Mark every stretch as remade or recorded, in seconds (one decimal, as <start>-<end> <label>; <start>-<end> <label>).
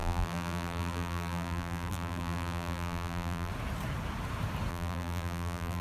0.0-3.5 remade; 3.5-4.7 recorded; 4.7-5.8 remade